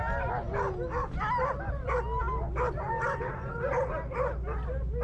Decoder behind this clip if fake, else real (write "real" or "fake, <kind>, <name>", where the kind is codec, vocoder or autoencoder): real